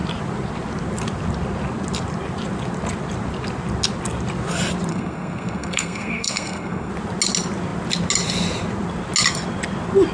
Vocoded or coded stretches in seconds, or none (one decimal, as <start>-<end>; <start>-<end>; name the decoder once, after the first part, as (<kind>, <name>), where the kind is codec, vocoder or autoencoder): 4.9-6.9 (codec, SNAC)